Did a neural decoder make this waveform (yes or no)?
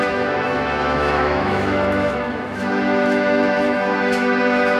yes